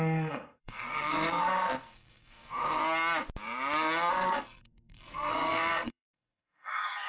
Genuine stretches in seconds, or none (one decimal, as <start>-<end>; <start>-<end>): 2.8-4.1